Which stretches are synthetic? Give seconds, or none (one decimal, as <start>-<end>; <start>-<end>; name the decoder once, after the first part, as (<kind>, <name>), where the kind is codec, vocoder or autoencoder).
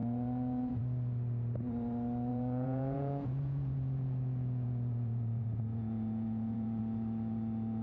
0.0-0.8 (vocoder, Vocos); 2.3-6.8